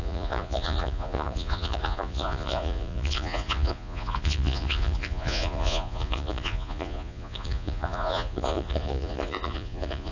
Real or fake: fake